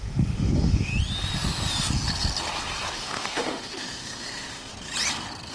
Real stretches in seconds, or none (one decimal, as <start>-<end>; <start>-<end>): 0.9-2.9; 4.7-5.5